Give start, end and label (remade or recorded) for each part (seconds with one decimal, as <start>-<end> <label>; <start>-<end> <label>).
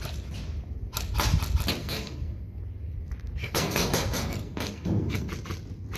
0.0-1.8 recorded; 1.8-2.6 remade; 2.6-3.4 recorded; 3.4-5.3 remade; 5.3-6.0 recorded